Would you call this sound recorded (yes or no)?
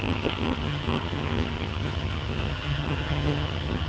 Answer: no